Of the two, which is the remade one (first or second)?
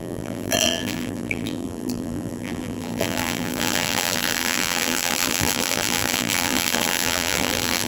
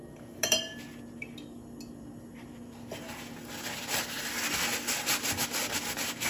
first